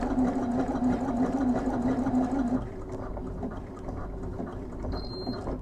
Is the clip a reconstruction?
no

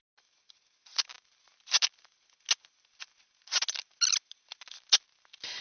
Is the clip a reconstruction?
no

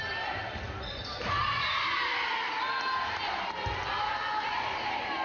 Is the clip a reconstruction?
no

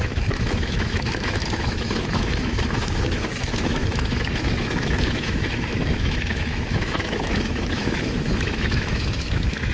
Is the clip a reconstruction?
yes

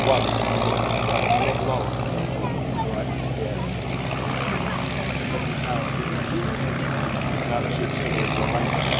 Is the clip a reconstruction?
no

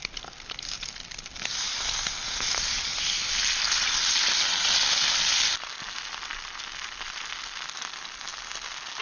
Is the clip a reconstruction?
no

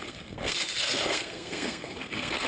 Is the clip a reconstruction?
yes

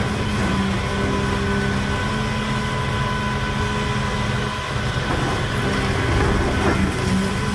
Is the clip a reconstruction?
no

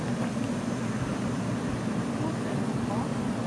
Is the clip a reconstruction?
no